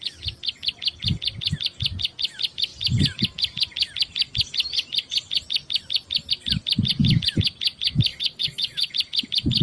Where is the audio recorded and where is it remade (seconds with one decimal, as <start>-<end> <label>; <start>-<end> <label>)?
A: 0.0-8.1 recorded; 8.1-8.9 remade; 8.9-9.6 recorded